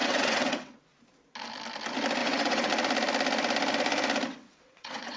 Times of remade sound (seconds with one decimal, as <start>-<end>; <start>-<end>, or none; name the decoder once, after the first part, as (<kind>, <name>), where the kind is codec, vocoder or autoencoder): 0.0-0.8 (vocoder, WaveNeXt); 2.2-2.7; 4.3-5.2